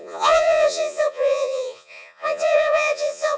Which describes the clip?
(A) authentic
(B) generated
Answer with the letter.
B